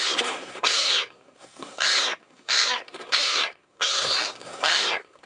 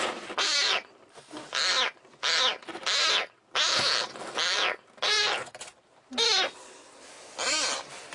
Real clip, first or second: second